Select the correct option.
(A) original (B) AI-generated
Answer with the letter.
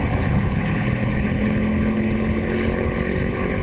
B